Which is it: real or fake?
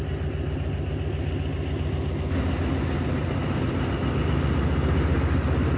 real